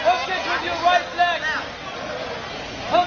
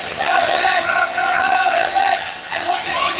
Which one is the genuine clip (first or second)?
first